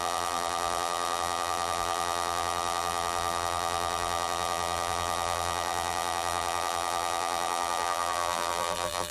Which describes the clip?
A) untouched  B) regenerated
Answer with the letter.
B